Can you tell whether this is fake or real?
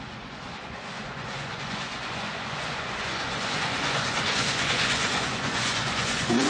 fake